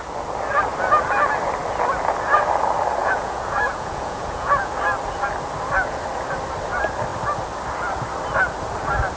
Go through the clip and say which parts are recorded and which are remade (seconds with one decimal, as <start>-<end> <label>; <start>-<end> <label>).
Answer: 0.0-3.0 recorded; 3.0-4.7 remade; 4.7-9.2 recorded